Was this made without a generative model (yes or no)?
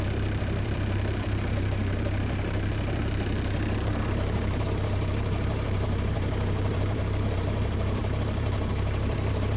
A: no